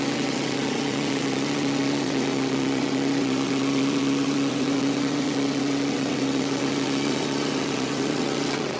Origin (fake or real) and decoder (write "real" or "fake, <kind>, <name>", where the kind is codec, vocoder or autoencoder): fake, vocoder, WaveNeXt